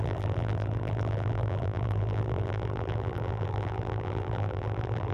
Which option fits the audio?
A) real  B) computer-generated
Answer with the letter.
B